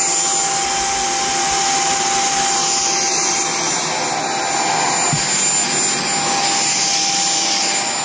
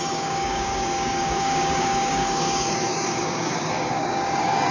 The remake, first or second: second